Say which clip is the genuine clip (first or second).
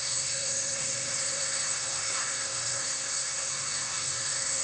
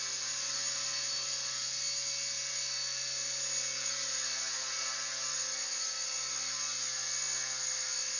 second